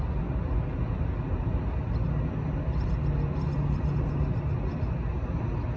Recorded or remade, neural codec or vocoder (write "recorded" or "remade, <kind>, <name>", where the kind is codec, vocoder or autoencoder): recorded